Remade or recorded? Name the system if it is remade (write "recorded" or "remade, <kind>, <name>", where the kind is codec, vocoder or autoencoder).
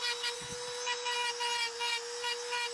recorded